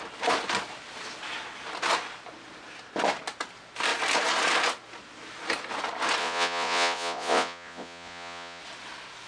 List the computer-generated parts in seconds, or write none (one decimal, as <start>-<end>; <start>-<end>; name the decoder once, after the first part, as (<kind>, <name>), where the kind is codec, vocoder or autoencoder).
6.2-8.6 (vocoder, Vocos)